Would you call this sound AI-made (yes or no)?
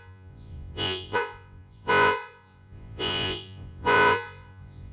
yes